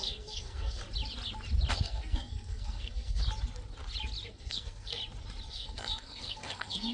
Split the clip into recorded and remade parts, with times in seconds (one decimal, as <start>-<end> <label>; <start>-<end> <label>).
0.0-0.8 remade; 0.8-1.7 recorded; 1.7-3.2 remade; 3.2-4.3 recorded; 4.3-5.0 remade; 5.0-5.5 recorded; 5.5-6.9 remade